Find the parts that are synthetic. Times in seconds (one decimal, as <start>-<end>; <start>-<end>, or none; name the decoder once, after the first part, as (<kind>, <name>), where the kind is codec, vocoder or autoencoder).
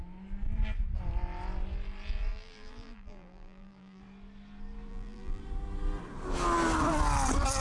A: 2.3-4.0 (vocoder, BigVGAN v2); 4.9-5.4